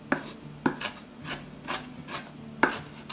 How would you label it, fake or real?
real